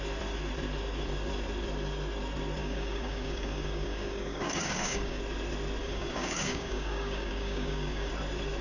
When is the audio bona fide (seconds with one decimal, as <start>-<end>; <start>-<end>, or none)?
0.0-2.6; 5.2-5.8; 8.1-8.6